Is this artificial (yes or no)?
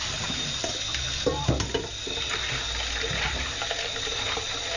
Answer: no